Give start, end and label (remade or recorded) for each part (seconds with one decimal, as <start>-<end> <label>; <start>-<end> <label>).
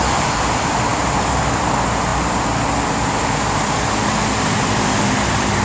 0.0-5.6 recorded